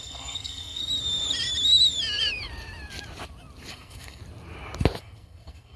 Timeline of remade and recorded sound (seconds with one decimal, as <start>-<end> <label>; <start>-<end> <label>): 0.0-0.8 remade; 0.8-3.7 recorded; 3.7-4.2 remade; 4.2-5.0 recorded; 5.0-5.8 remade